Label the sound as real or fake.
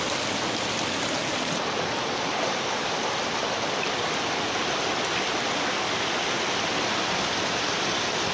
real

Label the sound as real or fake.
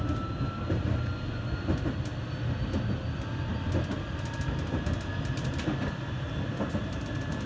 real